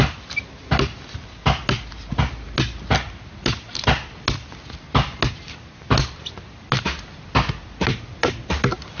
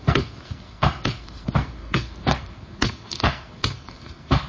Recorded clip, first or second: first